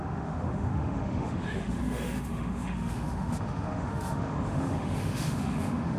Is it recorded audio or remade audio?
remade